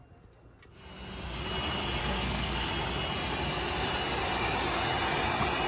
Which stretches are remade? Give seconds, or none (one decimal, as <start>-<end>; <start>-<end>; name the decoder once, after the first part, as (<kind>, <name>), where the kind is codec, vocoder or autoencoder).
2.0-2.7 (codec, SNAC)